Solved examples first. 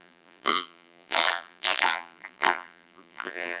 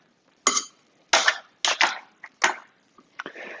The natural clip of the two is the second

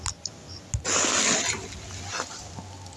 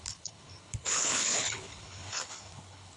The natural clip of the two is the first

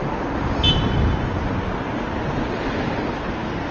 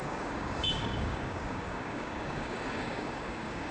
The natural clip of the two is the first